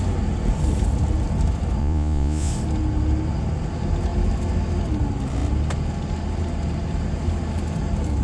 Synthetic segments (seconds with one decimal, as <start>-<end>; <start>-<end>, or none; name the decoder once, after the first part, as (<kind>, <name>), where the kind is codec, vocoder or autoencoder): 1.8-2.5 (vocoder, Vocos)